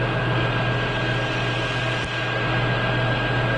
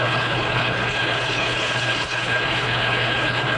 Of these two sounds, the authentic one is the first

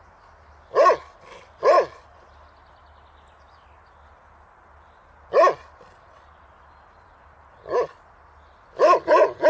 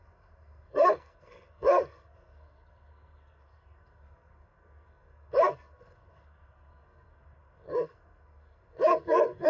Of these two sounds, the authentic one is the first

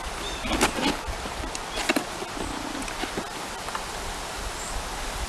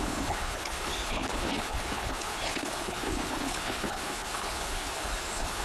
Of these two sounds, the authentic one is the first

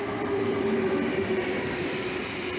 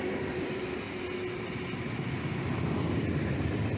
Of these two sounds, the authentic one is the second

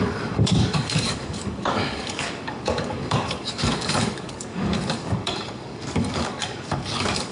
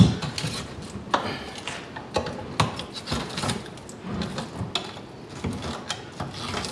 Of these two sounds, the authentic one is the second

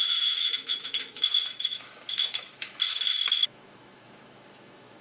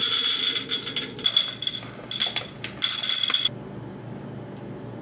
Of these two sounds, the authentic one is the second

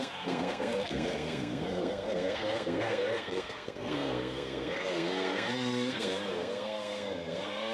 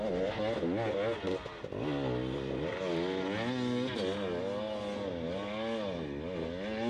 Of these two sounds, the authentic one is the second